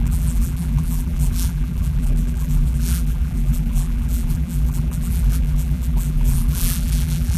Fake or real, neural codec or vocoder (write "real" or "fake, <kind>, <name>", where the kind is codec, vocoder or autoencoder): fake, vocoder, BigVGAN v2